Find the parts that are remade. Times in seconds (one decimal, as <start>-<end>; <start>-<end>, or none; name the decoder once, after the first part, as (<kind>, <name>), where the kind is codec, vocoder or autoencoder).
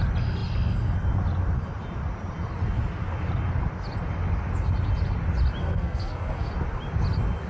5.6-6.5 (codec, SNAC)